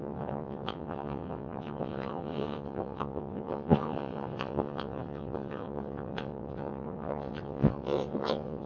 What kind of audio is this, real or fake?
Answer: fake